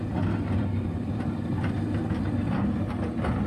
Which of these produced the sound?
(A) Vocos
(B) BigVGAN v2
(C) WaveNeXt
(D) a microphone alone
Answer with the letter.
B